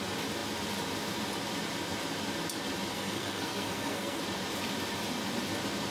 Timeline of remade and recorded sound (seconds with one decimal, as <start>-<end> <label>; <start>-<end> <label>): 0.0-2.9 recorded; 2.9-4.2 remade; 4.2-5.9 recorded